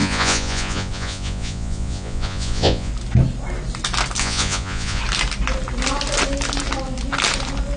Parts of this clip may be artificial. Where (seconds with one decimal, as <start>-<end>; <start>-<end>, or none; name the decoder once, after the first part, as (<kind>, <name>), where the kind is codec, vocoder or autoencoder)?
0.0-2.9 (vocoder, Vocos); 4.2-5.0